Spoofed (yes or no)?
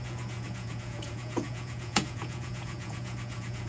yes